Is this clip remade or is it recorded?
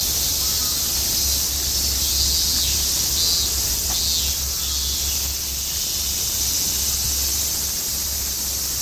recorded